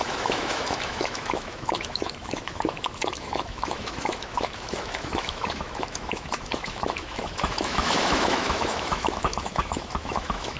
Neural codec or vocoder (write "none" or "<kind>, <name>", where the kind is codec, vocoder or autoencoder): autoencoder, DAC-VAE